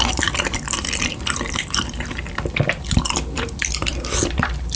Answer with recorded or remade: remade